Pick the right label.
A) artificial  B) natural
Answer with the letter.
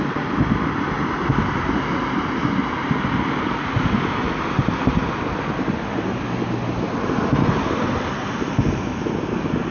B